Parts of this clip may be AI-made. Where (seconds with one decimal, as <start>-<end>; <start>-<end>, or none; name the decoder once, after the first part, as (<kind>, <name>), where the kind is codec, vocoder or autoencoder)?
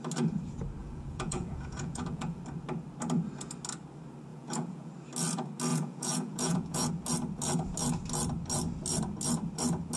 0.8-2.4 (vocoder, Vocos); 4.3-4.9; 5.7-6.9